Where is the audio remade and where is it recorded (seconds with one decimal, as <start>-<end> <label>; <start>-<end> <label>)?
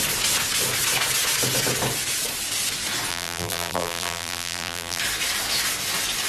0.0-3.1 recorded; 3.1-5.0 remade; 5.0-6.3 recorded